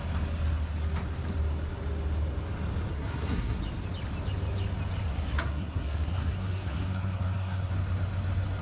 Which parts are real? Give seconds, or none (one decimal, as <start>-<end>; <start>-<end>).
0.0-2.9; 3.6-5.0; 7.7-8.6